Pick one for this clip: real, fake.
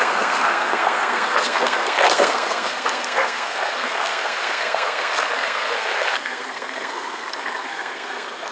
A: fake